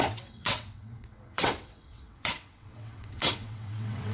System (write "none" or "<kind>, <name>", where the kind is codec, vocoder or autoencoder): vocoder, WaveNeXt